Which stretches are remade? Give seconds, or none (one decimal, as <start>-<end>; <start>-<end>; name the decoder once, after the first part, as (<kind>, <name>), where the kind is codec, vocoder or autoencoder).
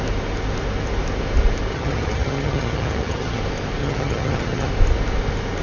1.7-3.4 (vocoder, HiFi-GAN); 3.8-4.7